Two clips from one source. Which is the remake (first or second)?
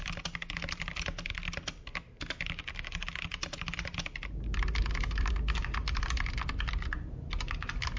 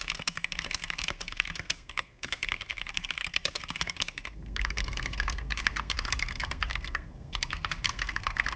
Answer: second